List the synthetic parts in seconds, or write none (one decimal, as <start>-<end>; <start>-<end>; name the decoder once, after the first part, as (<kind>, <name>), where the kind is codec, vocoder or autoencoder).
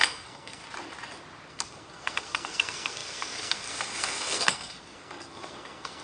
0.0-0.6 (codec, SNAC); 1.5-6.0